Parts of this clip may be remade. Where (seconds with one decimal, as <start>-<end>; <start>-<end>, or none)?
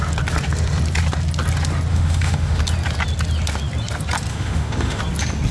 1.9-2.6; 4.3-5.0